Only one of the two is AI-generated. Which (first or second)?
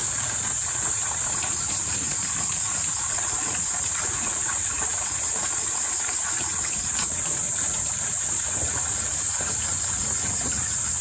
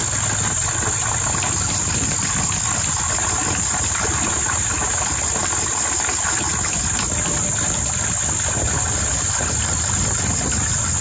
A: first